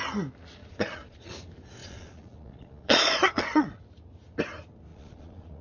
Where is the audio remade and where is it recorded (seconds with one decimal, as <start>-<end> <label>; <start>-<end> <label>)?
0.0-0.6 recorded; 0.6-1.3 remade; 1.3-1.8 recorded; 1.8-3.8 remade; 3.8-4.9 recorded; 4.9-5.6 remade

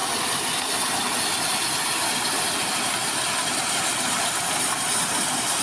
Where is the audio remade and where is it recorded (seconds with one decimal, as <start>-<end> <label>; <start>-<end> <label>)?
0.0-5.6 recorded